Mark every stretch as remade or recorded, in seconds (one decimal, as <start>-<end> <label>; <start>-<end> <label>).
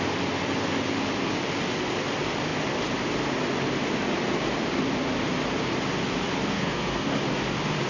0.0-6.5 recorded; 6.5-7.1 remade; 7.1-7.9 recorded